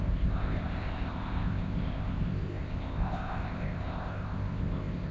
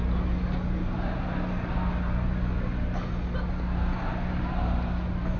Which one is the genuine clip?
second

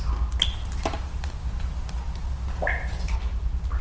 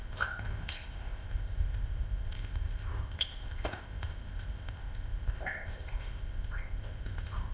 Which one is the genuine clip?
first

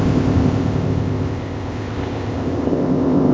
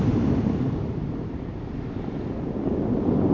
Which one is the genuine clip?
second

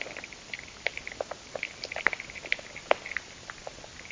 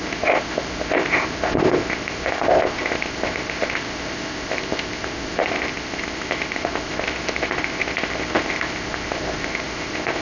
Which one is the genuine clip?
first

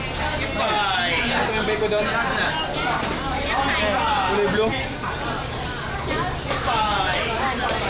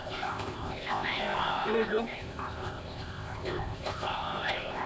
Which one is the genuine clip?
first